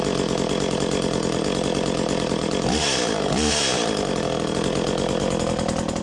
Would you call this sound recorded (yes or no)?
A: yes